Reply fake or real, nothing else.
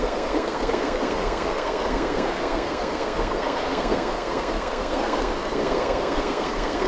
fake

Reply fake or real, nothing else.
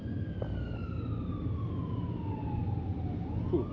real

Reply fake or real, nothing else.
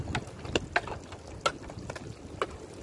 real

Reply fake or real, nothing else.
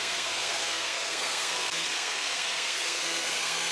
fake